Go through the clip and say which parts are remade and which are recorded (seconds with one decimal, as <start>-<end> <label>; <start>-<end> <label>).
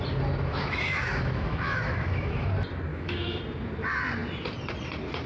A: 0.0-0.5 recorded; 0.5-2.5 remade; 2.5-2.9 recorded; 2.9-3.4 remade; 3.4-5.3 recorded